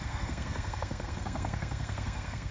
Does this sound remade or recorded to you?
remade